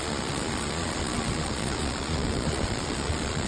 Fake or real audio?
fake